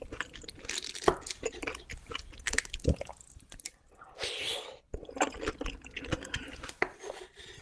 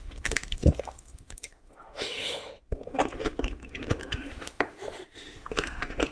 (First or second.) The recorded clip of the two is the first